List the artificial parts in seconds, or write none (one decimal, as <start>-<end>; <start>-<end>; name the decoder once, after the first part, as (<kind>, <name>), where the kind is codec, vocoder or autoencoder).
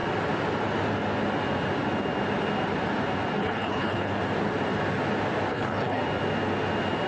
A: 3.4-4.2 (codec, HILCodec); 5.5-6.0